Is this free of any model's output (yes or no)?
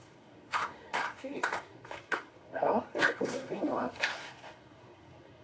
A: no